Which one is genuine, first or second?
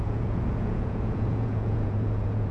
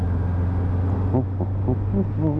second